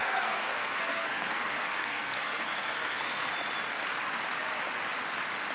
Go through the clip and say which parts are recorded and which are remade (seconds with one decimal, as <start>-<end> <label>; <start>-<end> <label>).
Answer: 0.0-3.3 remade; 3.3-5.5 recorded